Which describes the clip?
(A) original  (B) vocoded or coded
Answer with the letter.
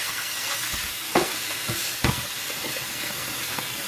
B